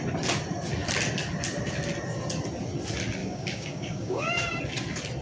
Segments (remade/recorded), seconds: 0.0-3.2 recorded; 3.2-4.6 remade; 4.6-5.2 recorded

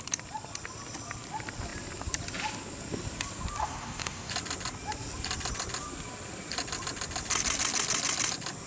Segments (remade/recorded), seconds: 0.0-3.6 recorded; 3.6-4.3 remade; 4.3-8.7 recorded

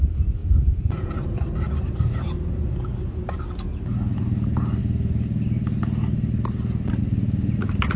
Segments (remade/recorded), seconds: 0.0-0.4 recorded; 0.4-1.1 remade; 1.1-8.0 recorded

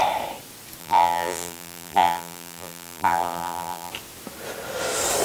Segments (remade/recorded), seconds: 0.0-0.8 recorded; 0.8-3.9 remade; 3.9-5.2 recorded

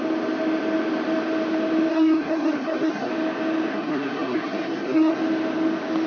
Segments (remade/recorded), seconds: 0.0-1.9 recorded; 1.9-3.1 remade; 3.1-3.7 recorded; 3.7-5.2 remade; 5.2-6.1 recorded

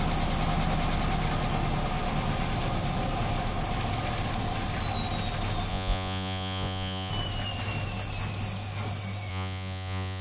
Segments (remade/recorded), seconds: 0.0-5.7 recorded; 5.7-7.1 remade; 7.1-9.3 recorded; 9.3-10.2 remade

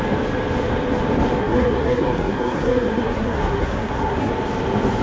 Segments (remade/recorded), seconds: 0.0-1.4 recorded; 1.4-4.3 remade; 4.3-5.0 recorded

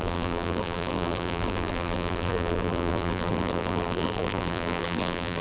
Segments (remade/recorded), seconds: 0.0-5.4 remade